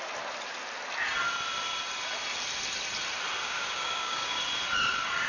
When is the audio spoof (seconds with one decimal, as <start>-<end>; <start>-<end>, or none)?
3.4-4.4